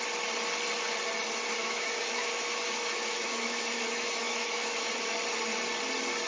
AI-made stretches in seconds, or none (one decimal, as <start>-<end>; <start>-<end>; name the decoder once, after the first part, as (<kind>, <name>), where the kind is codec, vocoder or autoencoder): 1.6-4.9 (autoencoder, DAC-VAE)